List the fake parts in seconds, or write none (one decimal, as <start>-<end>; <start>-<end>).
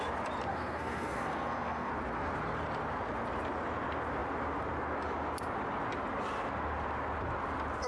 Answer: 0.5-1.9